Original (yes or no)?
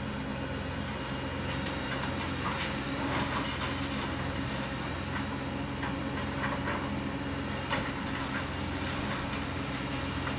yes